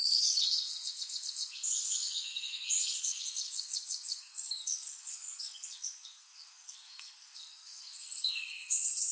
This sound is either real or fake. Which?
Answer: fake